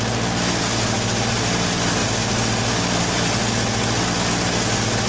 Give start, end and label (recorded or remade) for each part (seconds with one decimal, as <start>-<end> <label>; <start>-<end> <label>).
0.0-5.1 recorded